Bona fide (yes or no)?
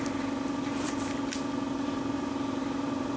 no